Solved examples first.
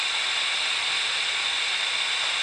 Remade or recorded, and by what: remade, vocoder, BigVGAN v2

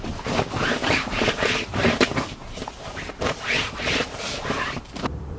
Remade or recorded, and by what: remade, vocoder, BigVGAN v2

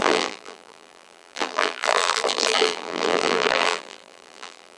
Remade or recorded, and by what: remade, vocoder, BigVGAN v2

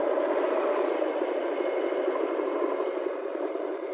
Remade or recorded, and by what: remade, vocoder, BigVGAN v2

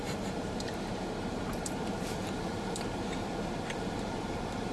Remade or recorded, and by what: remade, vocoder, BigVGAN v2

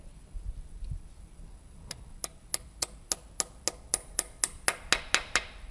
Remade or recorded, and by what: recorded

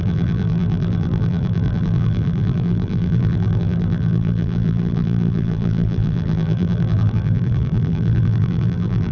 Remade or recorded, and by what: remade, vocoder, BigVGAN v2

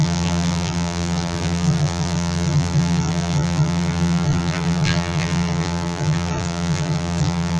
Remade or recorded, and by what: remade, vocoder, BigVGAN v2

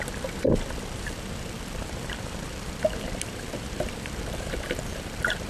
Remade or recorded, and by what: remade, vocoder, BigVGAN v2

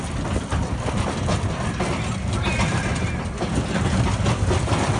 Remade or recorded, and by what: recorded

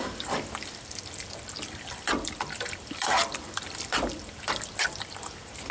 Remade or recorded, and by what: remade, vocoder, BigVGAN v2